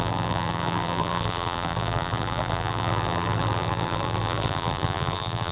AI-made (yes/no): yes